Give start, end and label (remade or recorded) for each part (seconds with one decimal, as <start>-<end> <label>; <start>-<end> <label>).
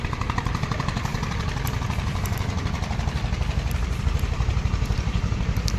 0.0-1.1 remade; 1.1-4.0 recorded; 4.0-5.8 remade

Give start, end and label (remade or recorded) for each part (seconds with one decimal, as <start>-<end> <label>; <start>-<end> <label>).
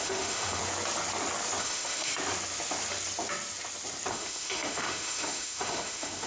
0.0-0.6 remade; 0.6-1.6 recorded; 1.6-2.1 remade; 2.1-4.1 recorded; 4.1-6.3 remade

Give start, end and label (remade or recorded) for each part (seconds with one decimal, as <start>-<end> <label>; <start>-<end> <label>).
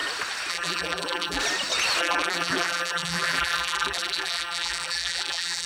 0.0-0.5 recorded; 0.5-1.4 remade; 1.4-2.0 recorded; 2.0-5.7 remade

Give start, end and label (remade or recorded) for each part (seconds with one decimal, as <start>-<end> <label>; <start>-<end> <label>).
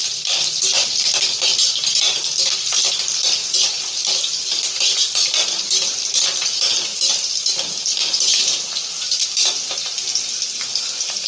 0.0-1.3 recorded; 1.3-3.4 remade; 3.4-4.3 recorded; 4.3-6.9 remade; 6.9-7.8 recorded; 7.8-9.2 remade; 9.2-10.6 recorded; 10.6-11.3 remade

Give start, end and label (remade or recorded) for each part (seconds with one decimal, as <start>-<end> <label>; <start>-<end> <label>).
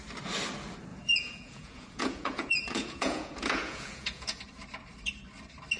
0.0-0.9 recorded; 0.9-4.4 remade; 4.4-5.8 recorded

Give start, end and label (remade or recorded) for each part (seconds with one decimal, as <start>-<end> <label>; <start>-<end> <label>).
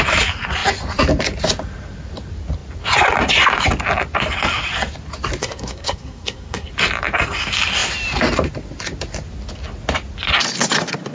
0.0-5.4 recorded; 5.4-6.7 remade; 6.7-11.1 recorded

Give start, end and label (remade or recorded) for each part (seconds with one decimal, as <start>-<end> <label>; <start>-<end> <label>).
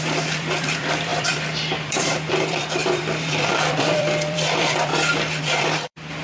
0.0-4.9 remade; 4.9-5.4 recorded; 5.4-6.2 remade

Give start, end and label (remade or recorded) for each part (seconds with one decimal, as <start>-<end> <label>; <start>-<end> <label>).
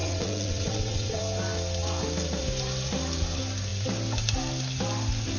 0.0-1.2 remade; 1.2-5.4 recorded